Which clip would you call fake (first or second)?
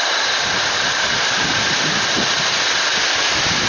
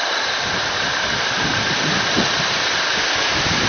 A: second